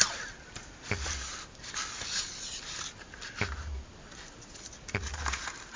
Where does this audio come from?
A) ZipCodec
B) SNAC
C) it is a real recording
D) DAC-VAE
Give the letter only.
C